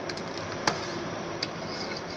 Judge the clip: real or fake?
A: real